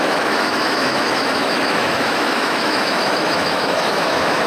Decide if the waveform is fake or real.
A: fake